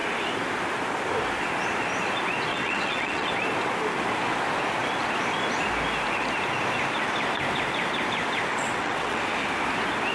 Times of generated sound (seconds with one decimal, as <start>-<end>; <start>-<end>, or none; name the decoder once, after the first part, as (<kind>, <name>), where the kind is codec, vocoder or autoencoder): 2.5-3.3 (vocoder, WaveNeXt); 8.5-9.2

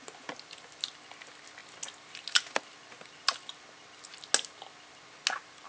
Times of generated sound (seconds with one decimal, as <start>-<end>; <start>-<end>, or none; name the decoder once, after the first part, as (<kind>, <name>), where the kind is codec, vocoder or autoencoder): none

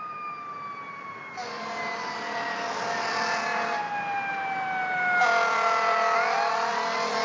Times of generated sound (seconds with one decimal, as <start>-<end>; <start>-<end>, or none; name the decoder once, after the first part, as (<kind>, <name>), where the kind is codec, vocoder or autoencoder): none

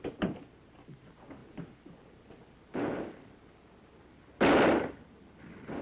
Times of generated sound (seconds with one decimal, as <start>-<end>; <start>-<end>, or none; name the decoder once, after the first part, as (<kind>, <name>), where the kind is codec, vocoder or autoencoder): none

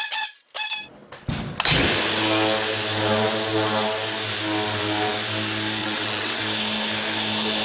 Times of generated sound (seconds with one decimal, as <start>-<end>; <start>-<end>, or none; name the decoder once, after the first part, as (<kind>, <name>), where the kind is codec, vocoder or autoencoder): 5.8-6.4 (vocoder, WaveNeXt)

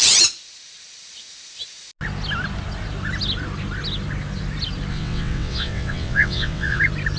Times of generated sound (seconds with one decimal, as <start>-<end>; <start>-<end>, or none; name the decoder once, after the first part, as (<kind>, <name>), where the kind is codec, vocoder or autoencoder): 4.9-6.8 (vocoder, WaveNeXt)